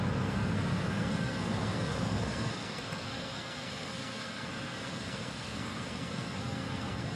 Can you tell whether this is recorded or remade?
remade